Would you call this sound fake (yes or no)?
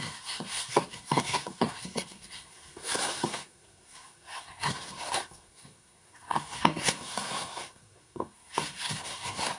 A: yes